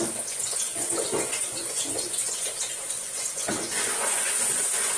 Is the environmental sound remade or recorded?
remade